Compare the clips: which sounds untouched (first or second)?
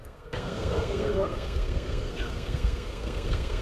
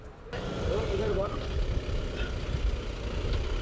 second